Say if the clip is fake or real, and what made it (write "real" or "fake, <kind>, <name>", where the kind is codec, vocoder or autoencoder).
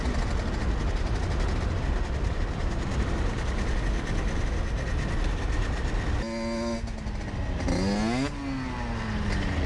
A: real